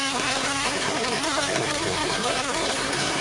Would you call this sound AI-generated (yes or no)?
yes